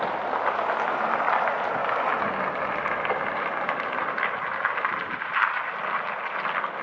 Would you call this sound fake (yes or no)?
no